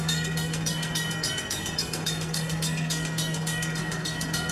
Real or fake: fake